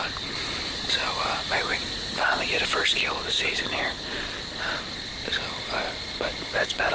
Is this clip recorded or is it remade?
recorded